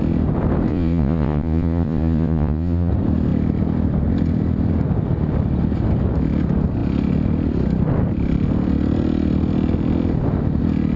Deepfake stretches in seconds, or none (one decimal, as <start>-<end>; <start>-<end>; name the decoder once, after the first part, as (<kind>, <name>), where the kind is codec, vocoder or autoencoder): 0.7-2.9 (vocoder, Vocos)

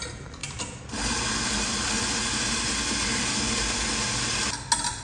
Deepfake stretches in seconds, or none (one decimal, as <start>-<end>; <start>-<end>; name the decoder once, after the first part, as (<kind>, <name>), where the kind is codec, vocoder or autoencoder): none

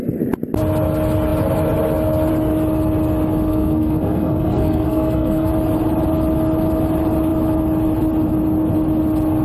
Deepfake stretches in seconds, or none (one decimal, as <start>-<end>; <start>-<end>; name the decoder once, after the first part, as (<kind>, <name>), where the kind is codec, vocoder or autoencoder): 3.5-5.5 (codec, SNAC)

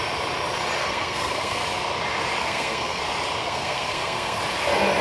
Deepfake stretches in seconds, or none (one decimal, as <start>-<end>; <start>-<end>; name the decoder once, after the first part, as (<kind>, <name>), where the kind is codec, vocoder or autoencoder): 0.8-1.6 (codec, SNAC); 2.4-3.0; 3.4-4.4

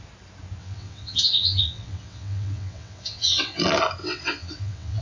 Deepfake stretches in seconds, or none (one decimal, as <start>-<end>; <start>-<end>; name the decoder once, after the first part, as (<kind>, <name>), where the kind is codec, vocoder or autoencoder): 0.6-3.6 (vocoder, WaveNeXt); 4.0-5.0

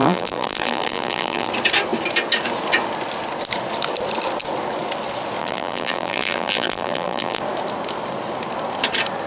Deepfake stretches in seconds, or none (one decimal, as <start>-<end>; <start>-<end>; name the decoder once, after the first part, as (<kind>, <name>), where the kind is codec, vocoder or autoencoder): 0.0-1.5 (vocoder, BigVGAN v2); 5.4-7.4

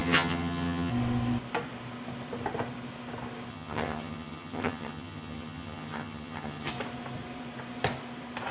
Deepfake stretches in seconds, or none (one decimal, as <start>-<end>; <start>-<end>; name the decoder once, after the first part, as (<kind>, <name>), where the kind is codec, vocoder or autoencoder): 0.0-0.9 (vocoder, HiFi-GAN); 3.5-6.7

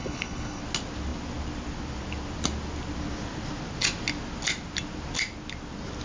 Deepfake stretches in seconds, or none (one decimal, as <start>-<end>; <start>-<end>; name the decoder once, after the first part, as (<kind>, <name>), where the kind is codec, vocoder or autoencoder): 0.0-0.6 (codec, HILCodec)